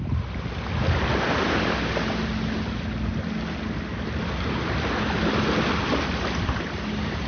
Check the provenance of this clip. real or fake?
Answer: real